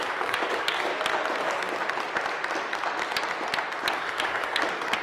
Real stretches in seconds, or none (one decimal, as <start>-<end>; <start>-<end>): 0.9-3.9